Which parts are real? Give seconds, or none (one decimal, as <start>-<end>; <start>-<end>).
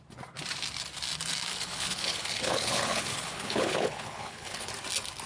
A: 0.0-1.5; 4.7-5.3